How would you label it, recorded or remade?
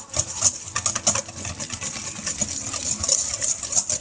recorded